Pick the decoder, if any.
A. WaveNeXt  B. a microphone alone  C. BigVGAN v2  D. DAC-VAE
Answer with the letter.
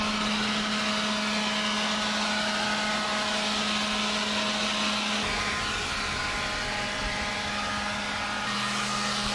B